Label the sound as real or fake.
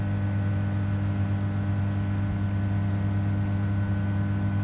real